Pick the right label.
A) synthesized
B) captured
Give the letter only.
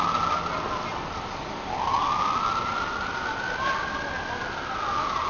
B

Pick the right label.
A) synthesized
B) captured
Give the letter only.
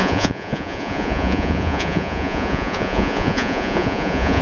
A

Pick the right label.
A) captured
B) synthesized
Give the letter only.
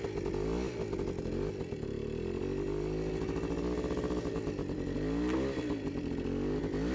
A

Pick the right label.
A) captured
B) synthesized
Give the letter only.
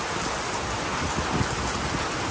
A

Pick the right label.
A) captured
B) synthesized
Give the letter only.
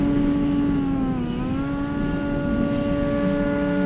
A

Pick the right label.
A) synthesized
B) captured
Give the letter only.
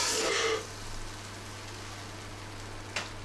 B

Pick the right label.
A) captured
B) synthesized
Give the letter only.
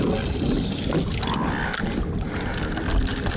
A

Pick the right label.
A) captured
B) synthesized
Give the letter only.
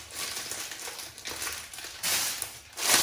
A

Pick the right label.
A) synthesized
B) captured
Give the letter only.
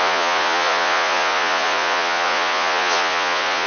A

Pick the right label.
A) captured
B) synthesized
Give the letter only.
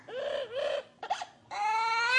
A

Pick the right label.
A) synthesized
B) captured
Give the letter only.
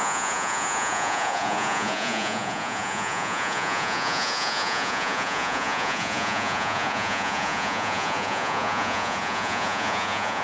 A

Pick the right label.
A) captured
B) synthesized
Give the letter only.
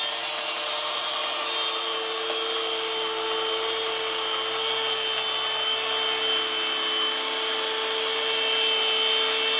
A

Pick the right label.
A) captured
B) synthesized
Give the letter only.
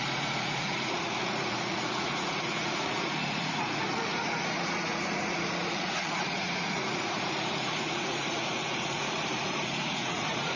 B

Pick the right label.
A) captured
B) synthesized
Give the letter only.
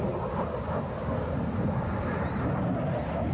A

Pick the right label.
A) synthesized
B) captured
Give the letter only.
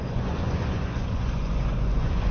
A